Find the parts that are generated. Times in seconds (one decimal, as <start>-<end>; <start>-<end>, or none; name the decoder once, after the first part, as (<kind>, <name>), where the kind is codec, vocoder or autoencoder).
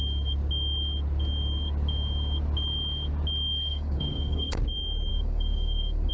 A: 3.7-4.6 (codec, DAC); 5.1-6.1